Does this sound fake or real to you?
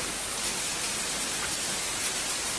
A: real